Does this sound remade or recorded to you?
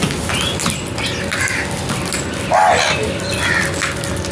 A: recorded